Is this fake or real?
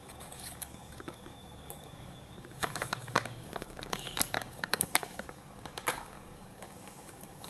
fake